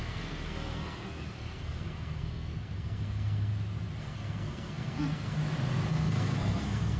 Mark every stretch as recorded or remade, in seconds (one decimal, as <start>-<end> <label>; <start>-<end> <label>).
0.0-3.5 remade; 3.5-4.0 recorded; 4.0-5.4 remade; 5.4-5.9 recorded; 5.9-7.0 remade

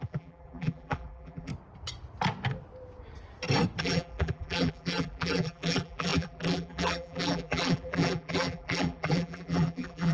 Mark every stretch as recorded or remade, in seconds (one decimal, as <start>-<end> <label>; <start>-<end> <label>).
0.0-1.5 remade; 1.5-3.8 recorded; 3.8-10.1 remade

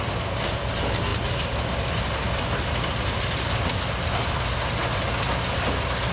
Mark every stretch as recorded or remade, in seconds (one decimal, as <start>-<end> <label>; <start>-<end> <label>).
0.0-1.1 recorded; 1.1-4.5 remade; 4.5-6.1 recorded

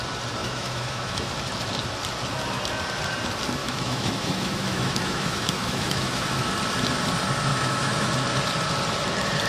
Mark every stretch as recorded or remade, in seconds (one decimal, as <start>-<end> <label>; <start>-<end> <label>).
0.0-0.4 recorded; 0.4-1.3 remade; 1.3-3.6 recorded; 3.6-6.5 remade; 6.5-7.5 recorded; 7.5-8.1 remade; 8.1-9.5 recorded